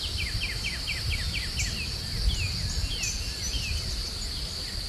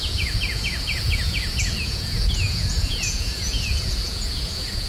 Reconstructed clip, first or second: second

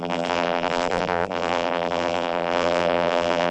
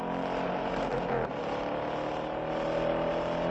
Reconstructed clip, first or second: first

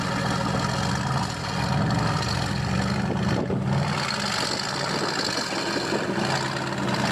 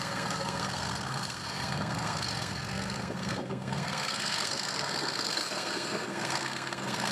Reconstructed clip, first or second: second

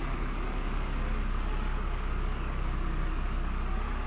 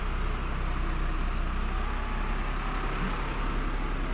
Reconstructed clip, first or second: first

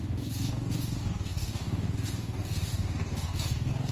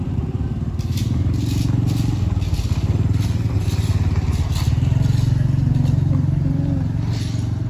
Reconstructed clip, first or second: first